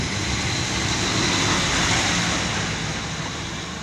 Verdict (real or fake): real